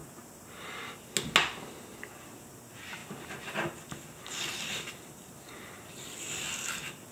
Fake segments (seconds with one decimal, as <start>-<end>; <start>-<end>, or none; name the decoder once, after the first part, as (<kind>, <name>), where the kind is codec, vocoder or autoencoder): 3.0-5.9 (vocoder, BigVGAN v2)